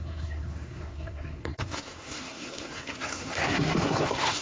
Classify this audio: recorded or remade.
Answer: remade